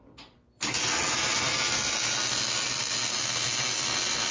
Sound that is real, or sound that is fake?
real